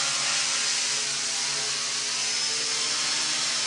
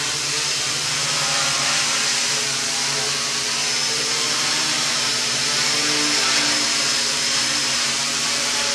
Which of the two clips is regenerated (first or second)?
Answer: second